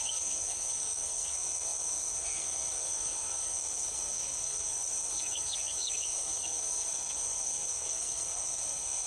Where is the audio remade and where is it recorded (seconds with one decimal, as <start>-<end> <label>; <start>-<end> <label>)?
0.0-9.1 remade